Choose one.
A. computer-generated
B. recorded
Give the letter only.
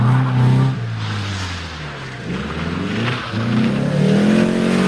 B